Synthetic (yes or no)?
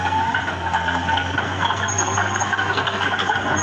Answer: yes